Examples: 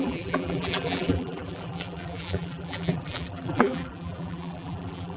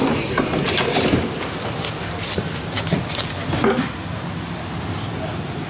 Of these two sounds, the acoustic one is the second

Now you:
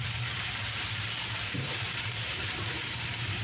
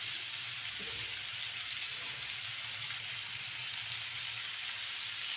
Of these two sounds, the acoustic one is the second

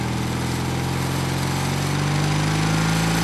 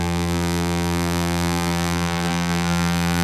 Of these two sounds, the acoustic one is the first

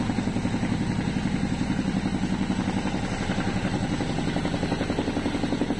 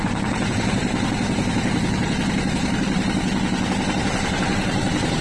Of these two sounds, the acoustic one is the first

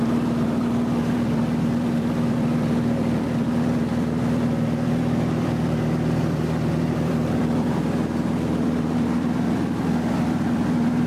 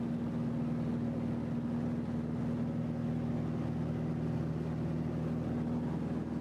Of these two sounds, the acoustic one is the second